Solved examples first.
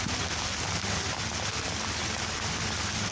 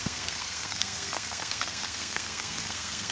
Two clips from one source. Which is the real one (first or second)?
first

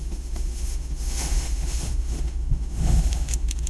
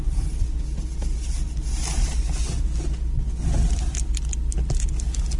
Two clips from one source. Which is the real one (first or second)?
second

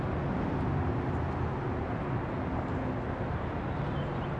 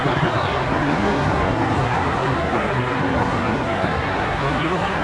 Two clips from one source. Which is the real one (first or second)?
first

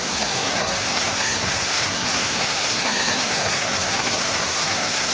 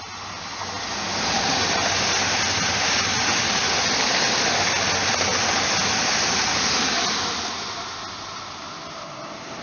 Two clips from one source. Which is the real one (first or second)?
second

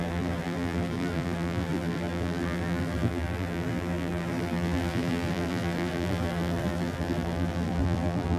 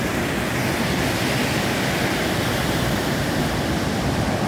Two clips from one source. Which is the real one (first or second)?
second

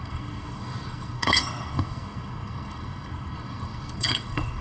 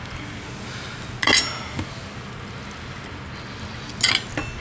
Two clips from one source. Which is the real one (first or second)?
second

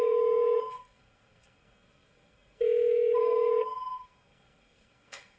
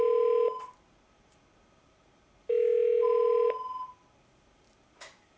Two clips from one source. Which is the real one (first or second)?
second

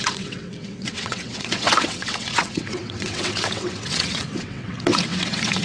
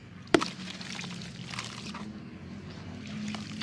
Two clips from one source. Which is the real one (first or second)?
second